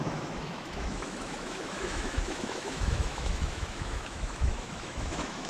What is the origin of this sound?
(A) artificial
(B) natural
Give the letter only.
A